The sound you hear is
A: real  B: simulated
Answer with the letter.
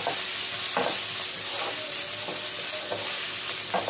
A